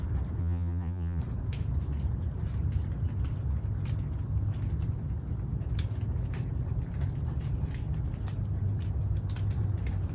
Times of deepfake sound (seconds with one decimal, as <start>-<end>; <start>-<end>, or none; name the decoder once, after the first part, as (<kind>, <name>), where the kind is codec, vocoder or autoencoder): 0.4-1.2 (vocoder, Vocos)